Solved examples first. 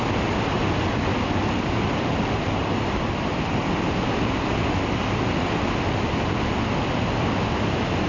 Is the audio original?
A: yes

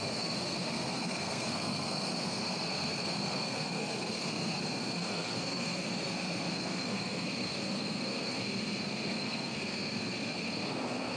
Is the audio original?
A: no